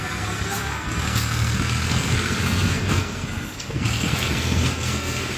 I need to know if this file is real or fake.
fake